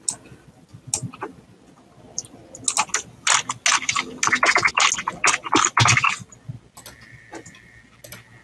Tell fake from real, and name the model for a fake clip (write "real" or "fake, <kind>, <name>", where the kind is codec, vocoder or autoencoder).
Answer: real